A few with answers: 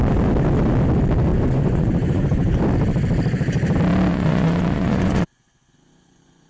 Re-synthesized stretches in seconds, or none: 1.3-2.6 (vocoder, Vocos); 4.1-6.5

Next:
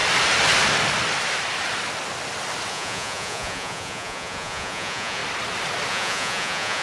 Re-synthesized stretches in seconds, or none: 2.7-5.2 (vocoder, Vocos); 5.9-6.8

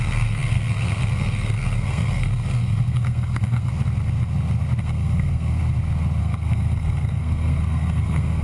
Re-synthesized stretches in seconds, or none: 0.0-3.7 (codec, SNAC); 4.8-5.6; 6.2-8.4

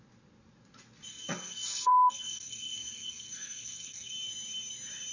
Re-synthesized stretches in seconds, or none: 1.1-4.1 (codec, SNAC)

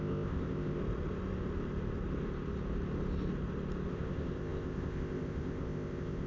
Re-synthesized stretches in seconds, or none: 0.0-0.8 (codec, ZipCodec); 3.9-6.3

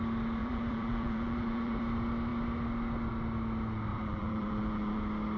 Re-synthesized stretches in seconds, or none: 0.4-1.8 (vocoder, BigVGAN v2); 3.9-5.0

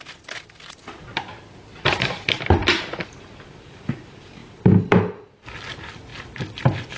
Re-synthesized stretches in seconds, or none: none